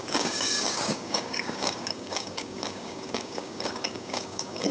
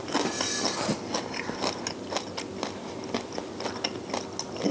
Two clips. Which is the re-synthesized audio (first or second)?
first